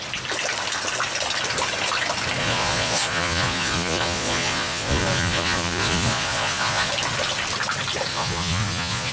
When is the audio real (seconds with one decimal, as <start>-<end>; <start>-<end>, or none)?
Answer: 0.0-2.4; 6.9-8.1